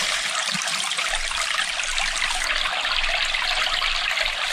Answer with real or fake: real